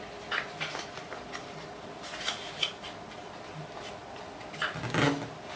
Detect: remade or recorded recorded